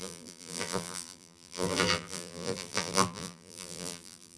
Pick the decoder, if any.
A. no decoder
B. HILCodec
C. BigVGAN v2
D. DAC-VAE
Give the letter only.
C